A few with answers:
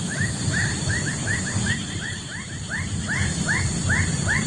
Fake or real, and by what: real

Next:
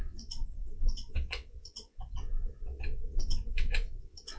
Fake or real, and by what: fake, vocoder, WaveNeXt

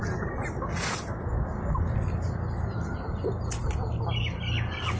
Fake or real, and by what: real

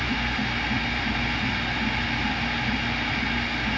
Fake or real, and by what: real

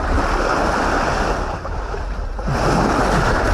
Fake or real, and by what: real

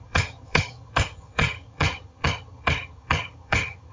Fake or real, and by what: fake, vocoder, HiFi-GAN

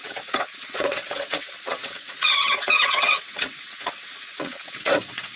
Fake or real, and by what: fake, vocoder, WaveNeXt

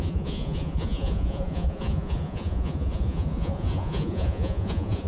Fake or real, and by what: fake, vocoder, Vocos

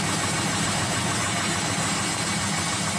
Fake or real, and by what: real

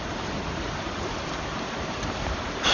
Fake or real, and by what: fake, vocoder, BigVGAN v2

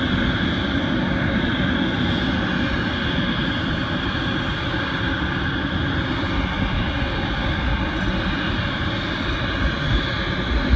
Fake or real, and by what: real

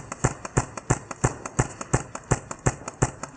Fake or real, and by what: real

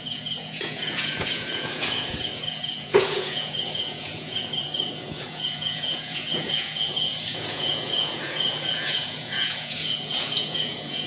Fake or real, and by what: fake, vocoder, Vocos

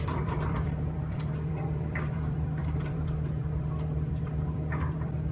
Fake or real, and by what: fake, vocoder, BigVGAN v2